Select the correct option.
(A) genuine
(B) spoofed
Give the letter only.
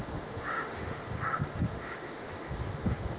B